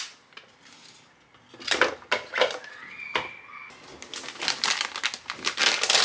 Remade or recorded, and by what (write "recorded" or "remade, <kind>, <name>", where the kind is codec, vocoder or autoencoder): recorded